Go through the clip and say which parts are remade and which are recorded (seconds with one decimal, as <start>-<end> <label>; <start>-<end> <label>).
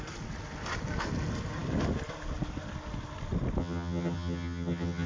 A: 0.0-3.6 recorded; 3.6-5.1 remade